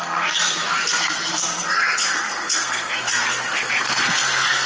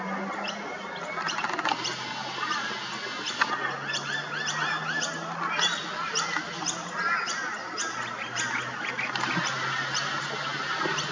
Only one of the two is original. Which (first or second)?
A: second